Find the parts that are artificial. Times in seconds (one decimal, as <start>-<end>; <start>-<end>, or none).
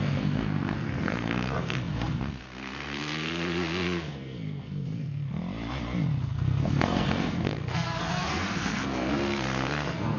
0.0-5.4; 6.2-10.2